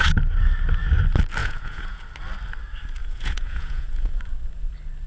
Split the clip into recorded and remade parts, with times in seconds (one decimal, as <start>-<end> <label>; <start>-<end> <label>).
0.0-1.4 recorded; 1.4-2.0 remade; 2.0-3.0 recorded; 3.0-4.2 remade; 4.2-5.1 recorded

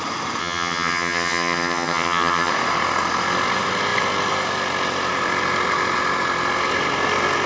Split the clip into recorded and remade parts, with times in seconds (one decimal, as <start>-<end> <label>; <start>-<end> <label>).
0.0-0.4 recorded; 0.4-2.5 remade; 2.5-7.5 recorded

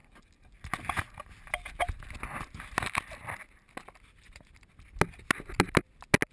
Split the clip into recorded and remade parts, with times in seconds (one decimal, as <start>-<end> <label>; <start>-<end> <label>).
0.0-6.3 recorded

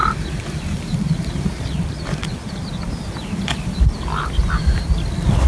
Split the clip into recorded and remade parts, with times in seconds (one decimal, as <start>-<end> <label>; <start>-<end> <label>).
0.0-1.3 recorded; 1.3-2.8 remade; 2.8-4.5 recorded; 4.5-5.5 remade

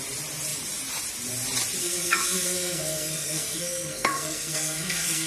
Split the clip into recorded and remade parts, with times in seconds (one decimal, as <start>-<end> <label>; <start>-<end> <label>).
0.0-1.8 recorded; 1.8-5.3 remade

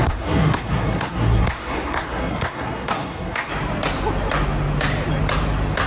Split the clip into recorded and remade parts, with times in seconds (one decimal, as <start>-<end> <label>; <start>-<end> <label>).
0.0-3.5 remade; 3.5-5.9 recorded

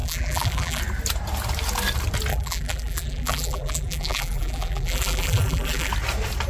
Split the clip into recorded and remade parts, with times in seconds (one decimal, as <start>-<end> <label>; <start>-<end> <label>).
0.0-0.8 remade; 0.8-2.3 recorded; 2.3-5.9 remade; 5.9-6.5 recorded

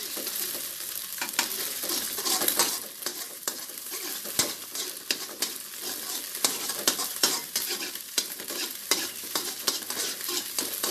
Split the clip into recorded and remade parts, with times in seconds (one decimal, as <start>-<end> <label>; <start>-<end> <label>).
0.0-3.1 recorded; 3.1-4.0 remade; 4.0-7.0 recorded; 7.0-9.7 remade; 9.7-10.9 recorded